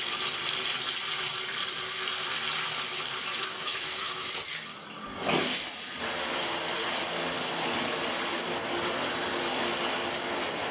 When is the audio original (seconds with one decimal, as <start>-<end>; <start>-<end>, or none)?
0.0-3.3; 4.3-10.7